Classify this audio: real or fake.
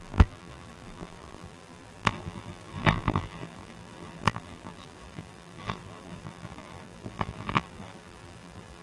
fake